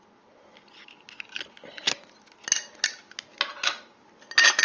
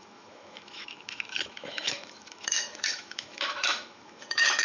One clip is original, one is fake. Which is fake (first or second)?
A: second